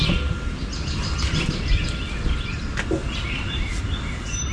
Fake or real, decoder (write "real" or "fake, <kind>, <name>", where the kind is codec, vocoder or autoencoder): real